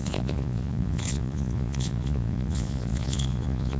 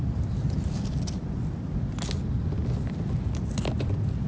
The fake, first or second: first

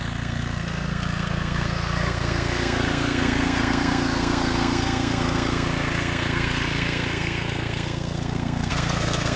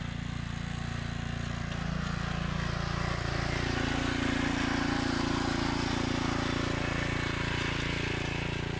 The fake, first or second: first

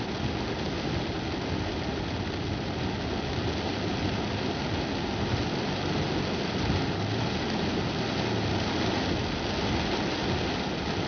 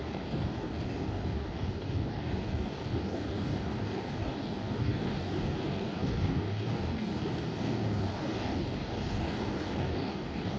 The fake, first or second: second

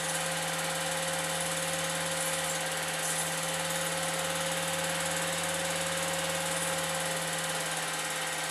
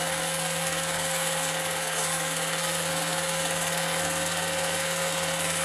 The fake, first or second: second